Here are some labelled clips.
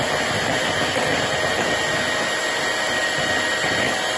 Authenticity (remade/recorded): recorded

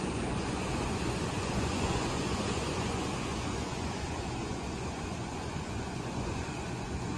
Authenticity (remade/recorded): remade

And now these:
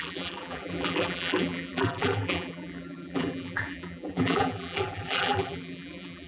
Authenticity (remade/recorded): remade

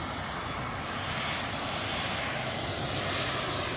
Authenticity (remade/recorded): recorded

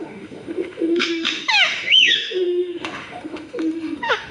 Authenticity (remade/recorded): remade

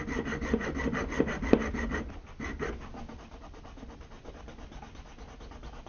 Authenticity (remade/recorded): recorded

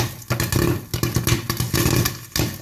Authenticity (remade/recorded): recorded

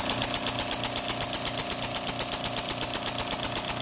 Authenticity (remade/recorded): recorded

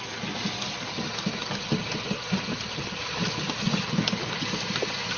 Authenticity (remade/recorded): recorded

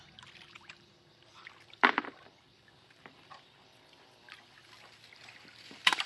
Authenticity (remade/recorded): remade